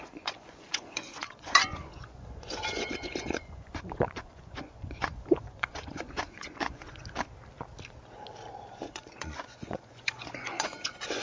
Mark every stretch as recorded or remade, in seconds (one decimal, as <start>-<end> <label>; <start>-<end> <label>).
0.0-7.0 remade; 7.0-8.7 recorded; 8.7-11.2 remade